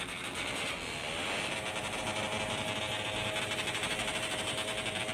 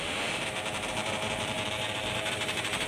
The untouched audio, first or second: first